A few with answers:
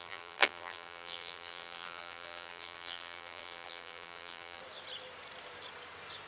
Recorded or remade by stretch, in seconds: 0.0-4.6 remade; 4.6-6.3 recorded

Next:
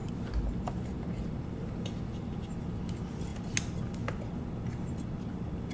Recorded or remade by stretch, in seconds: 0.0-2.6 remade; 2.6-5.7 recorded

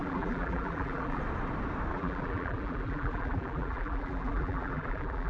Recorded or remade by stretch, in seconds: 0.0-1.2 remade; 1.2-1.9 recorded; 1.9-5.3 remade

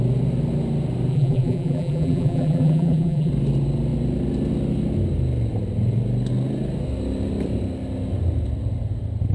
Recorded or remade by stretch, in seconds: 0.0-1.1 recorded; 1.1-3.3 remade; 3.3-9.3 recorded

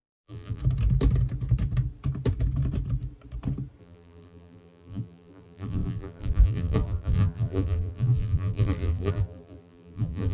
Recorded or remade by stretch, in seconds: 0.0-0.6 remade; 0.6-3.8 recorded; 3.8-10.3 remade

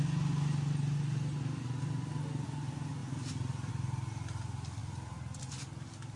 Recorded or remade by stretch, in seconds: 0.0-4.8 recorded; 4.8-5.4 remade; 5.4-6.2 recorded

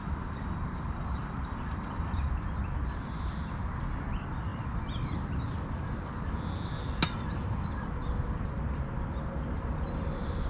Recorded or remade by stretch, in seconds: 0.0-2.3 remade; 2.3-10.5 recorded